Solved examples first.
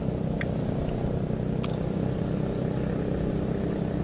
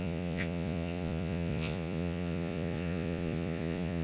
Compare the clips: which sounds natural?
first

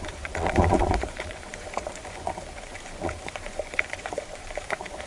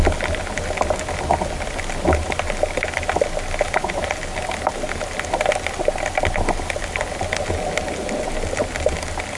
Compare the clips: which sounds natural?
second